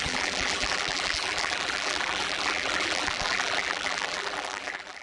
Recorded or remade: remade